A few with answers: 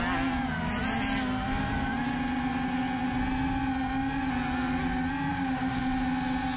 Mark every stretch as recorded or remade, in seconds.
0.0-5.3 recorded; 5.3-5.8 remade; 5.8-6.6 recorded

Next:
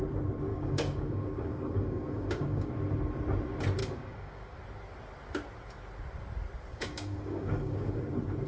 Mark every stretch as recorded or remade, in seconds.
0.0-0.5 recorded; 0.5-2.7 remade; 2.7-3.8 recorded; 3.8-4.6 remade; 4.6-6.7 recorded; 6.7-8.0 remade; 8.0-8.5 recorded

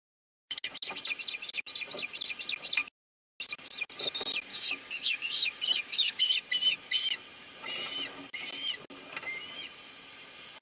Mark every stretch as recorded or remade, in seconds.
0.0-4.5 recorded; 4.5-6.3 remade; 6.3-10.6 recorded

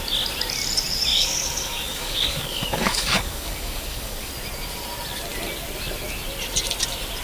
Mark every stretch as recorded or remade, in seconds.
0.0-1.1 recorded; 1.1-4.3 remade; 4.3-7.2 recorded

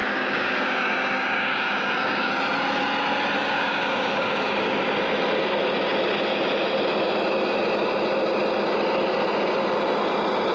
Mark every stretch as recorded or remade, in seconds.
0.0-2.3 remade; 2.3-3.4 recorded; 3.4-4.8 remade; 4.8-10.5 recorded